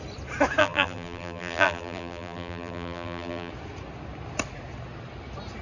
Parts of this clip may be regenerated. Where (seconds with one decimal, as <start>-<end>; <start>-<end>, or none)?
0.6-3.5